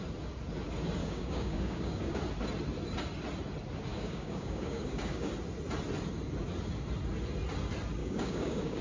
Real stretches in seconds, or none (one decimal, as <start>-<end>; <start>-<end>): 0.0-1.0; 2.2-3.9; 5.3-8.0